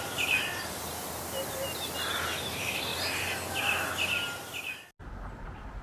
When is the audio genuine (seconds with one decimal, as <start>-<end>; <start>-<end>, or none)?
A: 0.0-5.8